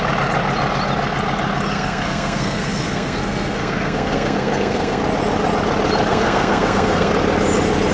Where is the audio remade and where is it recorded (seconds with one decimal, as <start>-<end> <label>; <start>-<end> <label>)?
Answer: 0.0-1.7 recorded; 1.7-5.0 remade; 5.0-6.1 recorded; 6.1-7.1 remade; 7.1-7.9 recorded

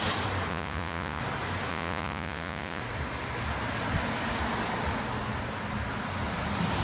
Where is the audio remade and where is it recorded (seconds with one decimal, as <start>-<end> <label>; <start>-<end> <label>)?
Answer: 0.0-0.5 recorded; 0.5-1.2 remade; 1.2-1.7 recorded; 1.7-2.8 remade; 2.8-6.8 recorded

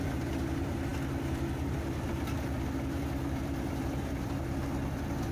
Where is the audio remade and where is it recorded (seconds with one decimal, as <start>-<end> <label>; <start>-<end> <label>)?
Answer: 0.0-5.3 remade

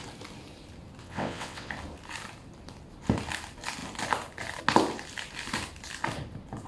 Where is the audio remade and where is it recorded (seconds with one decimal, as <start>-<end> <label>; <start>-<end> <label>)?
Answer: 0.0-1.0 recorded; 1.0-1.7 remade; 1.7-6.7 recorded

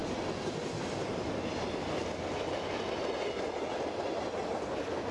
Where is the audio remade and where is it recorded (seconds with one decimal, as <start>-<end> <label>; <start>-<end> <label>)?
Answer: 0.0-5.1 recorded

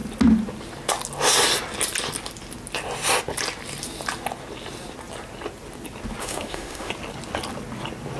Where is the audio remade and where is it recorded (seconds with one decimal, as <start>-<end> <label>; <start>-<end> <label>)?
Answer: 0.0-6.2 recorded; 6.2-6.9 remade; 6.9-8.2 recorded

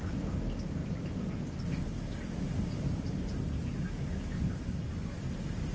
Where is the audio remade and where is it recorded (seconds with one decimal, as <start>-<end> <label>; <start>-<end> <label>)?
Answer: 0.0-5.7 recorded

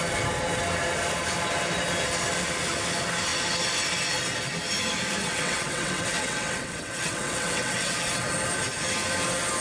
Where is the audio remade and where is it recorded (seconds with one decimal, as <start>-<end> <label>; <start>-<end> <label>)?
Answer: 0.0-5.2 recorded; 5.2-8.3 remade; 8.3-9.6 recorded